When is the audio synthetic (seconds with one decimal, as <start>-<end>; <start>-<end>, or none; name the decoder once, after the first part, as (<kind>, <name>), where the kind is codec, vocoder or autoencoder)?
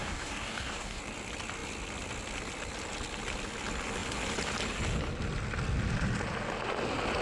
0.0-1.0 (codec, DAC)